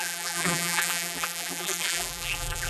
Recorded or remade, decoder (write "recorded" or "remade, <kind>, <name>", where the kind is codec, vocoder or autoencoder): remade, vocoder, BigVGAN v2